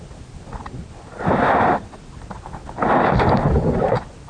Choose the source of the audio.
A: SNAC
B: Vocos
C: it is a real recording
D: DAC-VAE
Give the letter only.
C